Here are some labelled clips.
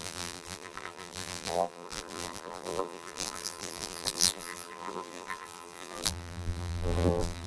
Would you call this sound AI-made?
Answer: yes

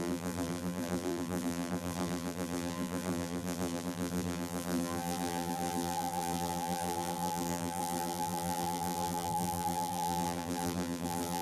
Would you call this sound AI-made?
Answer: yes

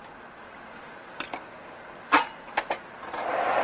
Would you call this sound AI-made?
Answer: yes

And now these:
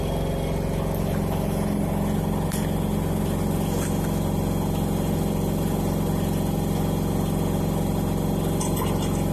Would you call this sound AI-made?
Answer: no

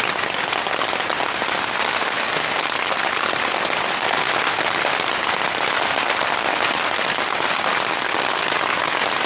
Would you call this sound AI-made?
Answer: no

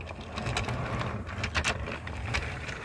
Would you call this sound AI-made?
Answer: no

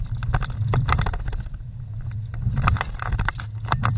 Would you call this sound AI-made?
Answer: no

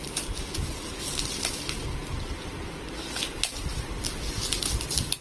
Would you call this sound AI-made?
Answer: no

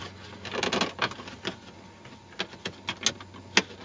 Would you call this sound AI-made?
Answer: no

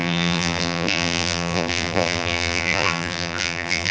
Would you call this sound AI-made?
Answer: yes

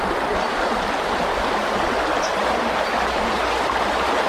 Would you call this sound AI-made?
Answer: yes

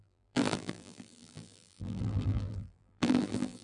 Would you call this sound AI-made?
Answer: yes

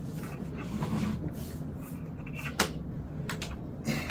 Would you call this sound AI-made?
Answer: no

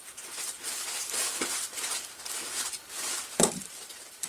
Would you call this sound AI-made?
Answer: yes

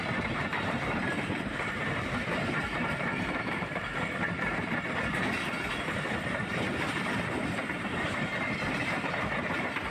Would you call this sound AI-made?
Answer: yes